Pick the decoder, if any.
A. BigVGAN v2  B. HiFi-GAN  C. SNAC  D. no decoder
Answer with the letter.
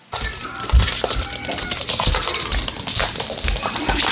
D